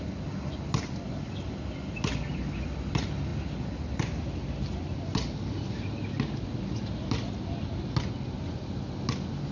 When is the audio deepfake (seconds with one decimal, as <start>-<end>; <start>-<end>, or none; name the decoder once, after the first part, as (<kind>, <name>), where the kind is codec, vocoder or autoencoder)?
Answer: none